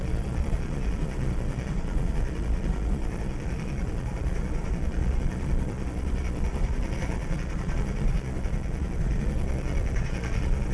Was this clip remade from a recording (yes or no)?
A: yes